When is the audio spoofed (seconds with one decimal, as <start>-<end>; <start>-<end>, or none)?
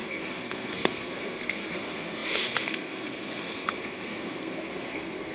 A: 0.0-5.3